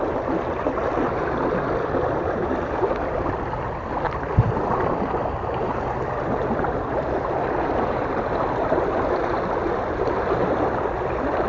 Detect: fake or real fake